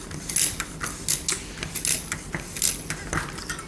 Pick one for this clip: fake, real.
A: real